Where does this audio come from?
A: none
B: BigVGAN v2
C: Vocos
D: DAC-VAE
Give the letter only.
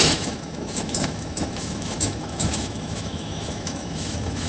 D